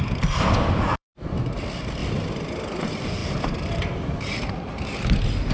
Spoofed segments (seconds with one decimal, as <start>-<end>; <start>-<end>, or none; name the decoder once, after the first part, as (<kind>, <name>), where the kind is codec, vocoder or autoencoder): 0.0-2.0 (vocoder, BigVGAN v2); 2.8-5.5